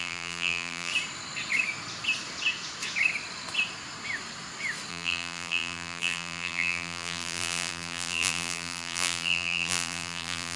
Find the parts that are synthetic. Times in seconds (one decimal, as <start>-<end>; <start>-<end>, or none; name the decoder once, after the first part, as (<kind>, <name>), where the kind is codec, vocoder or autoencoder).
0.0-0.9 (vocoder, BigVGAN v2); 4.9-10.6

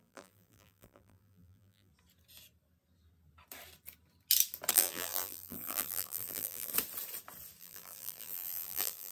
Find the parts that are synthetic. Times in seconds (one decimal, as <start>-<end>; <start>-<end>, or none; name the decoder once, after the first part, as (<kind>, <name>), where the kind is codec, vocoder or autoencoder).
0.0-1.9 (vocoder, BigVGAN v2); 4.7-6.7; 7.6-9.1

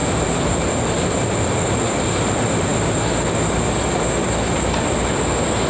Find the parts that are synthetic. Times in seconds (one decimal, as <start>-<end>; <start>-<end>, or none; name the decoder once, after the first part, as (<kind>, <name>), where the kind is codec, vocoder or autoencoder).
none

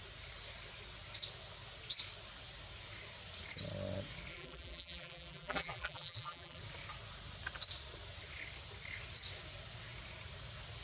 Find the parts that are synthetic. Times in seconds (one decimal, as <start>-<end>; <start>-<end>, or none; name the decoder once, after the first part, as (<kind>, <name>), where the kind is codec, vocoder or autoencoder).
4.3-6.6 (vocoder, BigVGAN v2)

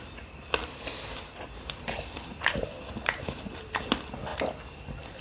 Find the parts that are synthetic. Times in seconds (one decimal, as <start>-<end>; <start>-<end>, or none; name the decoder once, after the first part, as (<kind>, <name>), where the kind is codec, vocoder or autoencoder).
0.6-3.7 (vocoder, BigVGAN v2)

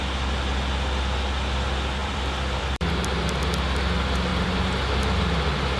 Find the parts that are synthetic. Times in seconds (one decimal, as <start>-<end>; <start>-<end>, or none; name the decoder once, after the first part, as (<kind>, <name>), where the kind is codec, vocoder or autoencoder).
2.0-2.9 (vocoder, BigVGAN v2); 4.3-5.0